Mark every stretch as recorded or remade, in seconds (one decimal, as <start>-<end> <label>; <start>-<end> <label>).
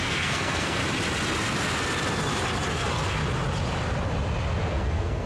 0.0-0.8 remade; 0.8-2.7 recorded; 2.7-3.2 remade; 3.2-4.7 recorded; 4.7-5.3 remade